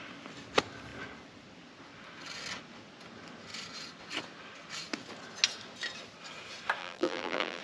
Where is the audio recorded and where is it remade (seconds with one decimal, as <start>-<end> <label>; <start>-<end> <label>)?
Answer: 0.0-6.8 recorded; 6.8-7.6 remade